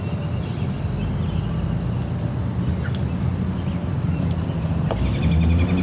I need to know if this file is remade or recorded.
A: recorded